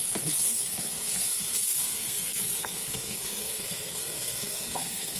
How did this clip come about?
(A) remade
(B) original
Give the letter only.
A